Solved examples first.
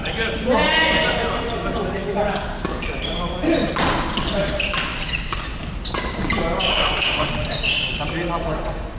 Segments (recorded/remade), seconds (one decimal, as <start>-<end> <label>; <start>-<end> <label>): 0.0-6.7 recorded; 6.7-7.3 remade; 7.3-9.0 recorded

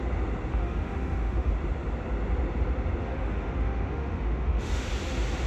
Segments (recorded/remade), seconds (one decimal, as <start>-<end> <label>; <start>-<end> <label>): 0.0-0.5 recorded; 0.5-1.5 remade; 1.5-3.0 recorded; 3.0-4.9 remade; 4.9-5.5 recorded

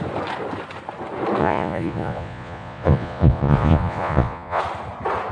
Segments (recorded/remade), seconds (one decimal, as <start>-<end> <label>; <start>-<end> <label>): 0.0-1.4 recorded; 1.4-4.6 remade; 4.6-5.3 recorded

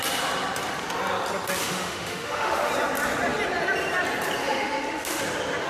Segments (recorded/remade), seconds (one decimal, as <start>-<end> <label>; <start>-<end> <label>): 0.0-1.6 recorded; 1.6-2.7 remade; 2.7-4.4 recorded; 4.4-5.2 remade; 5.2-5.7 recorded

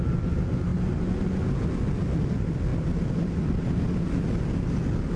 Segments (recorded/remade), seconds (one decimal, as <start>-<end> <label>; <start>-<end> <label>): 0.0-5.2 recorded